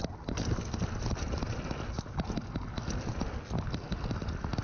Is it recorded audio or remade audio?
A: recorded